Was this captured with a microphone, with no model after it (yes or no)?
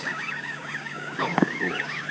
no